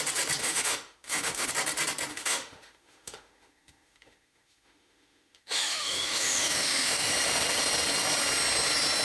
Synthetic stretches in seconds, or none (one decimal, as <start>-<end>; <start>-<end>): 0.4-1.5; 2.1-7.1